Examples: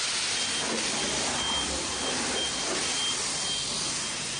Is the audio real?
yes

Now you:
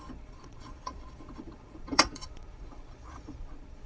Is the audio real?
no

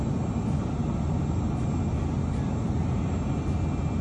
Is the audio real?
yes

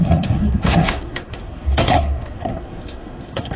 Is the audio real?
no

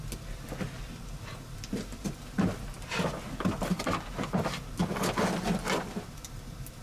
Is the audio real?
yes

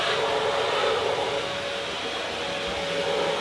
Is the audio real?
yes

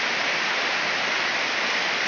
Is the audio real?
yes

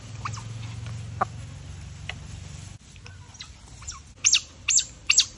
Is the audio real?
yes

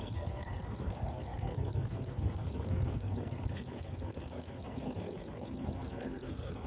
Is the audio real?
no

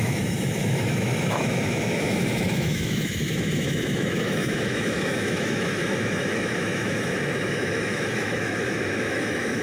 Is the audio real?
no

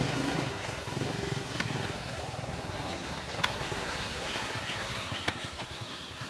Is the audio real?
no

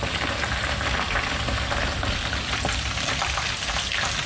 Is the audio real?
yes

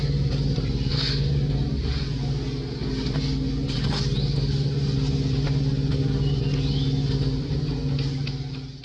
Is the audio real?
yes